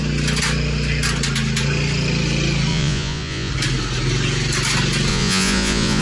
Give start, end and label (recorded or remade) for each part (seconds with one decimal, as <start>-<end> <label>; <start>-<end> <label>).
0.0-2.7 recorded; 2.7-3.5 remade; 3.5-5.1 recorded; 5.1-6.0 remade